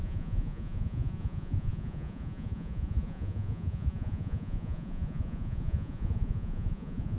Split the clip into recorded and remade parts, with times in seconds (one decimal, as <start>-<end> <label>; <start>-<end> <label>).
0.0-7.2 remade